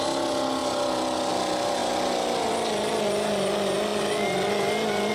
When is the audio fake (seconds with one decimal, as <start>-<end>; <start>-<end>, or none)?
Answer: none